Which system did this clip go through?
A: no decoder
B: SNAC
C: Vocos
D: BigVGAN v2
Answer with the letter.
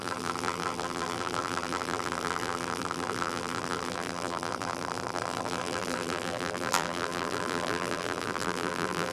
D